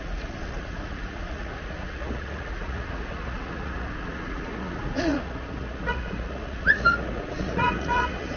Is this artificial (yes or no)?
yes